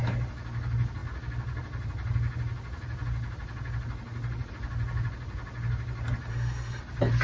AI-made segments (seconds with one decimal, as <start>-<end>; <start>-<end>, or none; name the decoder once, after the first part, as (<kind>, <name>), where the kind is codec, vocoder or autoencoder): 6.3-6.8 (codec, SNAC)